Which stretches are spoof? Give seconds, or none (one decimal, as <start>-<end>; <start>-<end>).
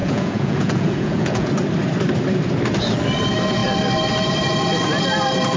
0.0-1.5